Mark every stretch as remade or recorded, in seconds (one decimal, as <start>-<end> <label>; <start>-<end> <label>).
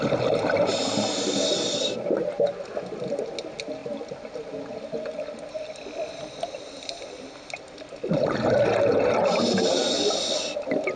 0.0-11.0 recorded